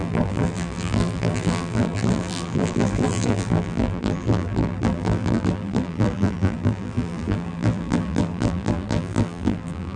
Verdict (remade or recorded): remade